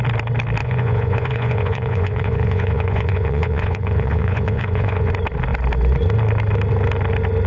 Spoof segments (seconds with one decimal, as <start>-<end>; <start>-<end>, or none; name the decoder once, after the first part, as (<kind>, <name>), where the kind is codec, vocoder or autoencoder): 0.6-5.1 (vocoder, Vocos)